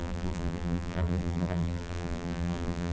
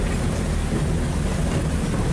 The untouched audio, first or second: second